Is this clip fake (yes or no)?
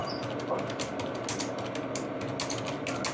no